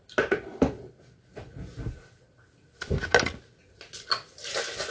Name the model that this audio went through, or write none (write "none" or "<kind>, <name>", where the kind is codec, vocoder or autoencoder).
none